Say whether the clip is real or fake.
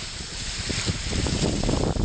real